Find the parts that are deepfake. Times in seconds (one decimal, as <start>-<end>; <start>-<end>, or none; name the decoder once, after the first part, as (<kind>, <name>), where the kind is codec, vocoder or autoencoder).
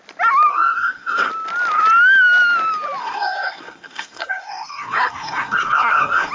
0.5-1.3 (codec, SNAC); 3.0-6.3